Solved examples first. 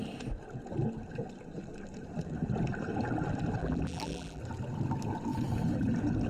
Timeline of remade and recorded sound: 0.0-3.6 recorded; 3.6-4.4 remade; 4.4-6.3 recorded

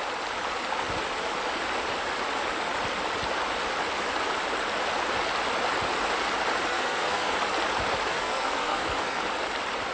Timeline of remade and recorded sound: 0.0-6.7 recorded; 6.7-7.3 remade; 7.3-8.1 recorded; 8.1-9.2 remade; 9.2-9.9 recorded

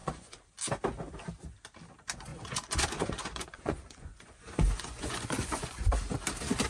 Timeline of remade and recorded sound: 0.0-0.5 remade; 0.5-2.3 recorded; 2.3-5.9 remade; 5.9-6.7 recorded

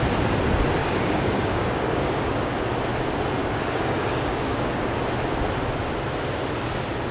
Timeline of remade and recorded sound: 0.0-0.8 recorded; 0.8-2.7 remade; 2.7-3.4 recorded; 3.4-5.0 remade; 5.0-7.1 recorded

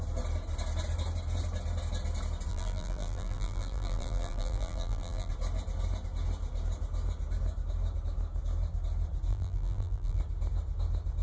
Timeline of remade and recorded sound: 0.0-2.5 recorded; 2.5-5.3 remade; 5.3-9.3 recorded; 9.3-10.2 remade; 10.2-11.2 recorded

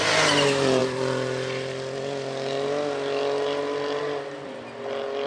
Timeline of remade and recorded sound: 0.0-5.3 recorded

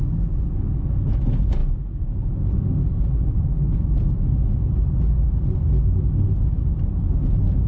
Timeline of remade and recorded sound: 0.0-7.7 recorded